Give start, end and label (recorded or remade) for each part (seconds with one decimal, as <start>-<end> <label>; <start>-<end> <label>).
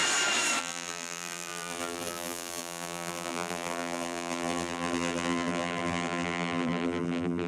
0.0-0.6 recorded; 0.6-7.5 remade